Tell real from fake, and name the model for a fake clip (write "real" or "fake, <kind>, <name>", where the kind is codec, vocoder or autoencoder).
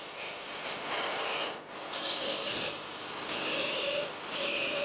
real